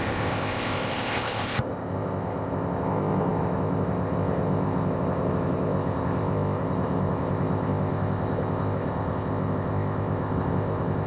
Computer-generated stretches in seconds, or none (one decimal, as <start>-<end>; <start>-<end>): 0.0-11.1